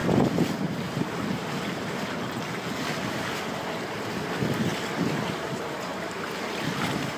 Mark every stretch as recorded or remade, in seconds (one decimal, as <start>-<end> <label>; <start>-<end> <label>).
0.0-7.2 recorded